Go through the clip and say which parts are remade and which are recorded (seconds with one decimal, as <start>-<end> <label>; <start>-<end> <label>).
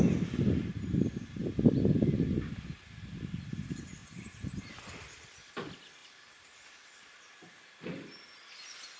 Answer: 0.0-4.0 recorded; 4.0-4.7 remade; 4.7-6.0 recorded; 6.0-8.4 remade; 8.4-9.0 recorded